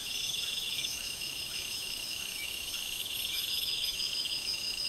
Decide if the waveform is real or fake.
fake